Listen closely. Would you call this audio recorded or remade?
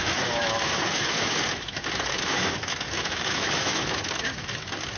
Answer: remade